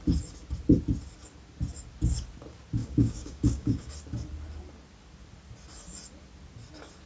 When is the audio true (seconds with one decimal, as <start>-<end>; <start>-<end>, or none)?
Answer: 0.0-2.8; 3.9-7.1